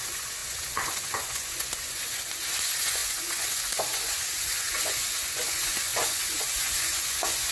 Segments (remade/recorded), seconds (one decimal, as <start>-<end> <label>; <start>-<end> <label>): 0.0-7.5 remade